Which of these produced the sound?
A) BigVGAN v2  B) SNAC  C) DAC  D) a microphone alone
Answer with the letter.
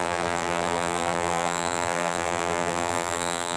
A